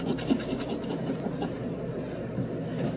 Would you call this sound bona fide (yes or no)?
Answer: yes